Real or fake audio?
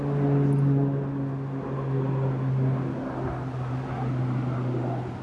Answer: real